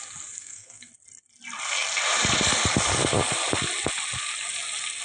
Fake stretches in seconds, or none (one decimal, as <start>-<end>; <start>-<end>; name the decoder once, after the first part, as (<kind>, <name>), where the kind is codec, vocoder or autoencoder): 0.4-0.9 (codec, SNAC)